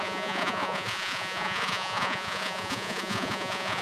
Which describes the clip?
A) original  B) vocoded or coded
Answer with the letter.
B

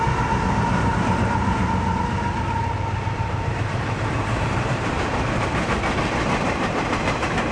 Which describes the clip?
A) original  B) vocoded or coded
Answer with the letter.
B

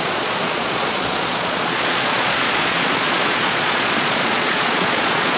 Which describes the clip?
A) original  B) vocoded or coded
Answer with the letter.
B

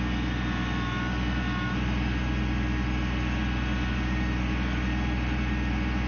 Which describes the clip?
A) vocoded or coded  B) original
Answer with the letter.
B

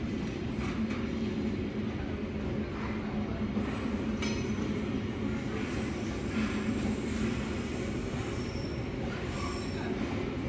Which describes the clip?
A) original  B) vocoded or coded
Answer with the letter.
A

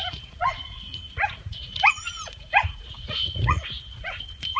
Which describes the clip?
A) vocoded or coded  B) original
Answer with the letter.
A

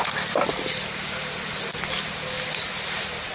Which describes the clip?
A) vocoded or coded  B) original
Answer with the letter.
B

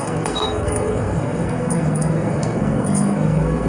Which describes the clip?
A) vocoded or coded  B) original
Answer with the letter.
A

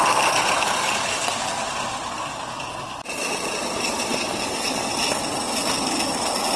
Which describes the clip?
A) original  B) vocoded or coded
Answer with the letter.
A